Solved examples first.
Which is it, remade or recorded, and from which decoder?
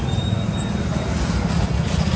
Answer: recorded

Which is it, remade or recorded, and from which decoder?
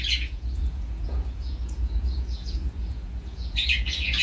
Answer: remade, vocoder, Vocos